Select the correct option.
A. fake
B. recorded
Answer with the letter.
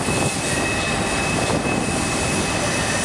B